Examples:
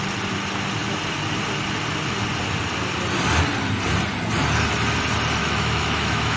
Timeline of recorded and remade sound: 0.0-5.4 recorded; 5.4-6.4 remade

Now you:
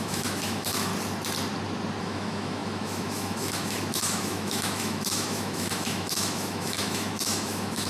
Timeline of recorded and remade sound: 0.0-0.9 remade; 0.9-2.0 recorded; 2.0-7.9 remade

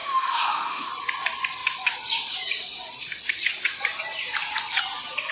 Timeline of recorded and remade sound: 0.0-0.9 remade; 0.9-5.3 recorded